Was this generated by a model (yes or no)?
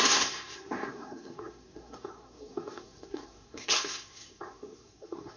yes